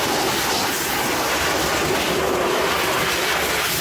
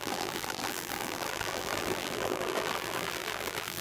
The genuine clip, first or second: first